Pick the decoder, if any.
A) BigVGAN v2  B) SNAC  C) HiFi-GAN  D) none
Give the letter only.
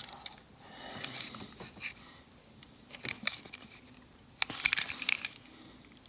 D